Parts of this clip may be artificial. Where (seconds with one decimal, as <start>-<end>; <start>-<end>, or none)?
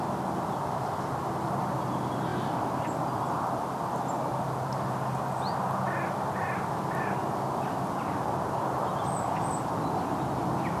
none